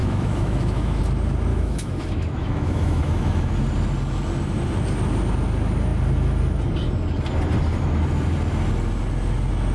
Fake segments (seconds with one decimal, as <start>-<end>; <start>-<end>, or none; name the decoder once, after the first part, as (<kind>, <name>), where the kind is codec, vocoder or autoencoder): 0.0-1.0 (autoencoder, DAC-VAE); 1.5-3.5